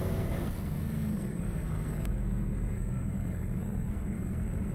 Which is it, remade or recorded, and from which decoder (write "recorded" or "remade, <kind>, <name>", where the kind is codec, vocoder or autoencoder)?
remade, codec, SNAC